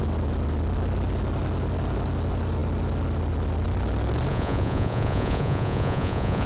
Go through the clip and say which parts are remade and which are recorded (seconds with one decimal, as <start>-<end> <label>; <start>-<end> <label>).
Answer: 0.0-4.3 recorded; 4.3-6.5 remade

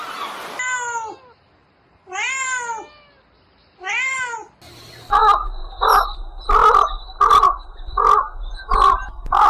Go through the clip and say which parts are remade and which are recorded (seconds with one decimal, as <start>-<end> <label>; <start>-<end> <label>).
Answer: 0.0-9.5 recorded